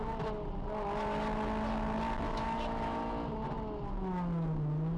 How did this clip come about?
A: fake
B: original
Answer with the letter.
B